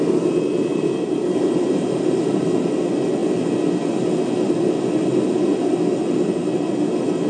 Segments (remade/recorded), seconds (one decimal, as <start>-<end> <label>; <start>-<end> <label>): 0.0-0.7 recorded; 0.7-2.4 remade; 2.4-7.3 recorded